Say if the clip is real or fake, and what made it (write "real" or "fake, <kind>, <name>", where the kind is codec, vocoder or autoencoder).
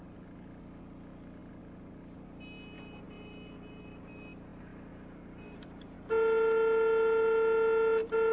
real